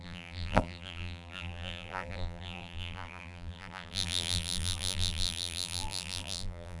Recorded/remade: remade